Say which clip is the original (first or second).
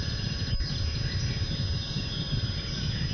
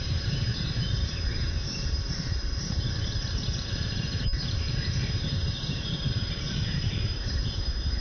first